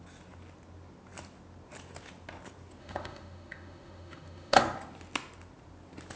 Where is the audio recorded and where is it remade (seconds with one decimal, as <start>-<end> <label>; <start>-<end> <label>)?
0.0-2.8 recorded; 2.8-4.6 remade; 4.6-6.2 recorded

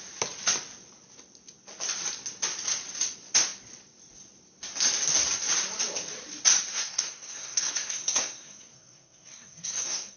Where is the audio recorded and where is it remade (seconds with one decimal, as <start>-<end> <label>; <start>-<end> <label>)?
0.0-6.7 recorded; 6.7-10.2 remade

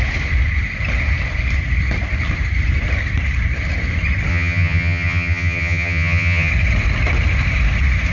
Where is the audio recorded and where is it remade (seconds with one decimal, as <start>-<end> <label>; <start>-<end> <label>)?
0.0-4.3 recorded; 4.3-6.5 remade; 6.5-8.1 recorded

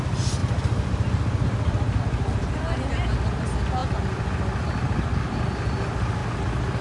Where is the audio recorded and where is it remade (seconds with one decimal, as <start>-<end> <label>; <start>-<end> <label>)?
0.0-6.8 recorded

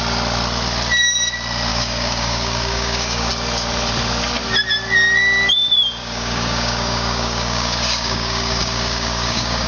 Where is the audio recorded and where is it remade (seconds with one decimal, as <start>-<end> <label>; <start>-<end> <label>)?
0.0-1.7 recorded; 1.7-3.3 remade; 3.3-6.0 recorded; 6.0-9.7 remade

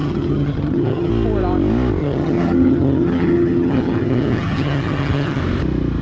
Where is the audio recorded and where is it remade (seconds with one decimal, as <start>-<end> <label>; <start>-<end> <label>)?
0.0-1.1 remade; 1.1-2.0 recorded; 2.0-5.4 remade; 5.4-6.0 recorded